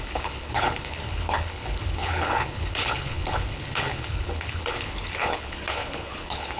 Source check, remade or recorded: remade